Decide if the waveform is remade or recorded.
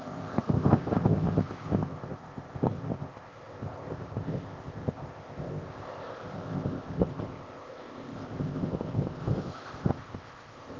remade